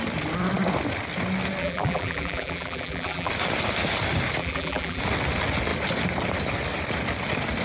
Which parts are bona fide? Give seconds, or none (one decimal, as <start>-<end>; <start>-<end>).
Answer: 0.0-1.6; 3.3-4.4; 5.0-7.6